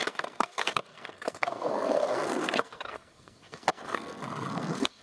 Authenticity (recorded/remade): remade